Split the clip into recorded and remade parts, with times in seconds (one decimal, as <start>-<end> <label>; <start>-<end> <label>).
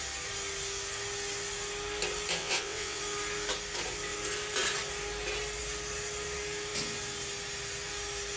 0.0-2.4 recorded; 2.4-3.0 remade; 3.0-8.4 recorded